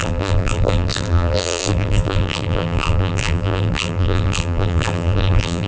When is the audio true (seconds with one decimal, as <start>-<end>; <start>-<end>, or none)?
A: none